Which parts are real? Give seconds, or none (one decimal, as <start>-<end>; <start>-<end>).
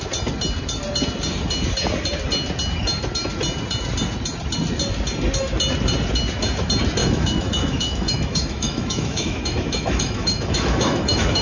0.0-7.0